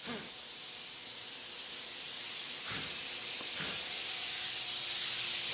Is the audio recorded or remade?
recorded